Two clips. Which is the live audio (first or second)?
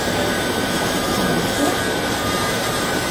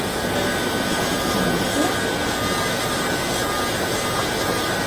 second